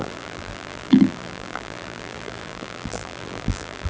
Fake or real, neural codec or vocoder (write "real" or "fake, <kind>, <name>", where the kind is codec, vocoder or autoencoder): fake, vocoder, BigVGAN v2